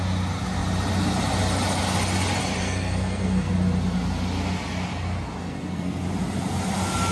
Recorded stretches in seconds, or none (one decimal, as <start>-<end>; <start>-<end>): 0.0-2.6; 3.5-5.4; 6.0-7.1